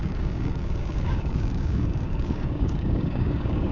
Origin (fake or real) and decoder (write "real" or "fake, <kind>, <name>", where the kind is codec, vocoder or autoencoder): fake, codec, DAC